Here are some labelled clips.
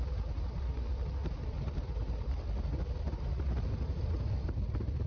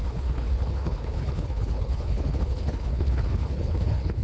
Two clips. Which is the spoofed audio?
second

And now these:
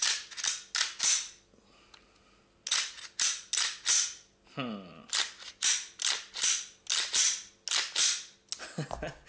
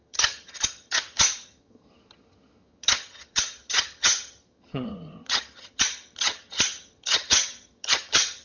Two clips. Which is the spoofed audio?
second